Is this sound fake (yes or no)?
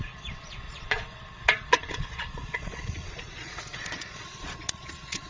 yes